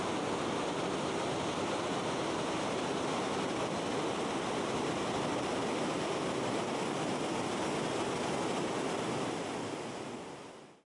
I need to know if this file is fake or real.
real